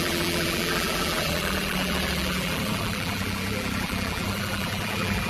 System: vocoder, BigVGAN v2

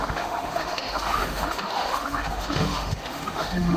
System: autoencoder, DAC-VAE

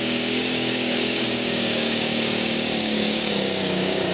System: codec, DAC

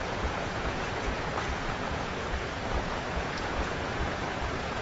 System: vocoder, Vocos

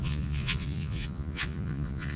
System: vocoder, Vocos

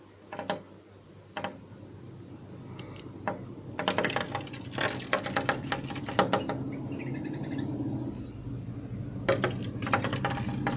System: none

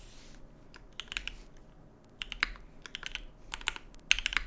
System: none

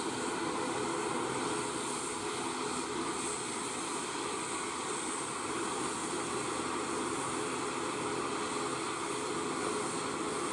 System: none